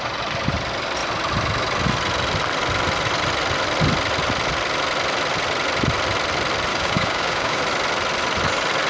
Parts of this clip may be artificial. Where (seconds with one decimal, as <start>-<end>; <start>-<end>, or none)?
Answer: 6.7-7.6